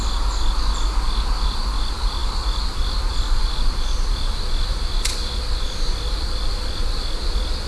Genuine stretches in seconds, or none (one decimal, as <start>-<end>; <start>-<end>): 0.0-7.7